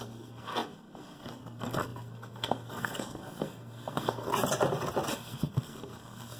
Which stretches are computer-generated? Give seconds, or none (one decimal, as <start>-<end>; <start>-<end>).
0.0-4.3; 5.1-6.4